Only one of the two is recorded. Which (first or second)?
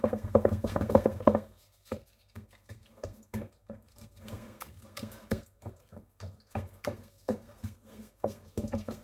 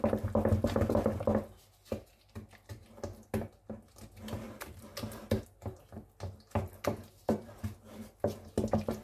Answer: second